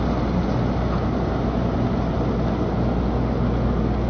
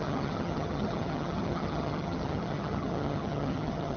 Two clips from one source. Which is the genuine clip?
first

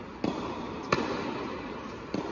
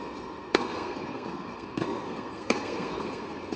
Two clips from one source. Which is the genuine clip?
first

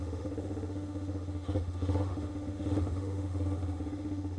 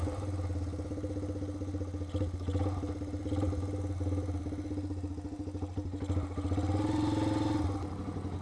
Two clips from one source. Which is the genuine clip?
second